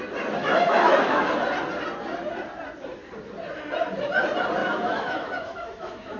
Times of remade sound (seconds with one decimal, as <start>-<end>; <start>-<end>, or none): 0.4-1.2; 4.6-6.2